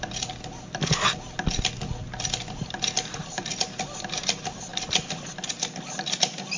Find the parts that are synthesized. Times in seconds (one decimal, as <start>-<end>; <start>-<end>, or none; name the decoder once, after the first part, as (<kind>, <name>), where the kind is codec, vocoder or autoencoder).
none